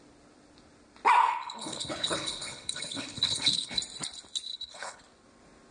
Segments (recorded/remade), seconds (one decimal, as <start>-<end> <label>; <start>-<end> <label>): 0.0-1.2 recorded; 1.2-3.8 remade; 3.8-4.5 recorded; 4.5-5.0 remade; 5.0-5.7 recorded